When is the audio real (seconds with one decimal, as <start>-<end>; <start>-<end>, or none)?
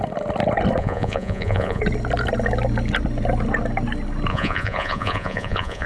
0.0-0.8; 1.8-4.3